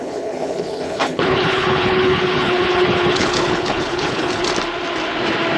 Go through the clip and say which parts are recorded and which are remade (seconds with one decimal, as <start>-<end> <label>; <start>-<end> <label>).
0.0-4.4 remade; 4.4-5.6 recorded

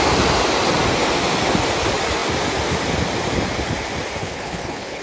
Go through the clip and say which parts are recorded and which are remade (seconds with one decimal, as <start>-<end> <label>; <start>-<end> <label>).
0.0-4.2 recorded; 4.2-5.0 remade

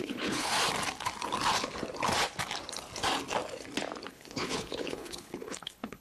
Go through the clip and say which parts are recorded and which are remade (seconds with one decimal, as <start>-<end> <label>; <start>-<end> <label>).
0.0-0.5 remade; 0.5-4.1 recorded; 4.1-6.0 remade

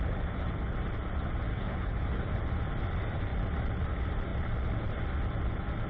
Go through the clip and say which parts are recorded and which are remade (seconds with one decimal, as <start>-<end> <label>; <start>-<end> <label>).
0.0-1.5 recorded; 1.5-2.2 remade; 2.2-5.9 recorded

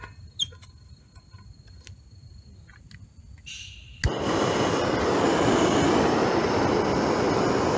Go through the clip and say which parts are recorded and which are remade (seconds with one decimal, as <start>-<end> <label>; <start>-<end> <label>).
0.0-7.8 recorded